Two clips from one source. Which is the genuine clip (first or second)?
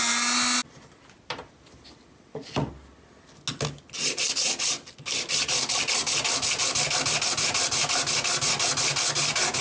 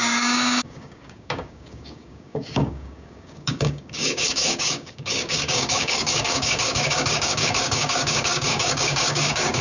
first